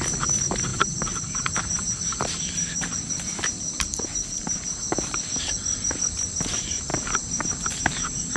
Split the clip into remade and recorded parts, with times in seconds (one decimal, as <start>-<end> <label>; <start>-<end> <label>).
0.0-0.7 recorded; 0.7-4.9 remade; 4.9-6.9 recorded; 6.9-7.4 remade; 7.4-8.4 recorded